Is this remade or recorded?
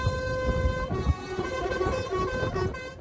recorded